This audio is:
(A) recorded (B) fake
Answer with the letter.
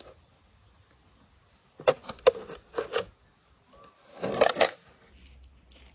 A